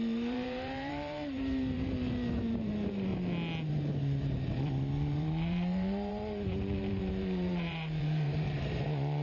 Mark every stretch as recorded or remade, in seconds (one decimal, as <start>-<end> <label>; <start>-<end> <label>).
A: 0.0-3.1 remade; 3.1-3.7 recorded; 3.7-9.2 remade